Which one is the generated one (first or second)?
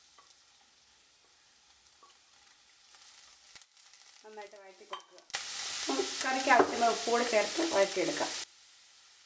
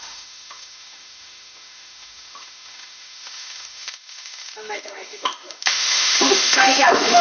second